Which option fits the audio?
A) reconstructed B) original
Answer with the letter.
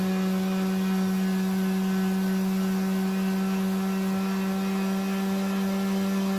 B